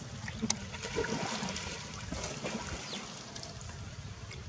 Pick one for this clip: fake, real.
real